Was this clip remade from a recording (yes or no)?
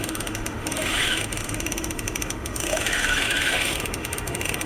yes